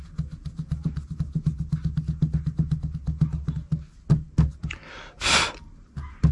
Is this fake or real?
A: real